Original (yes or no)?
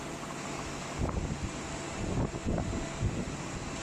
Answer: yes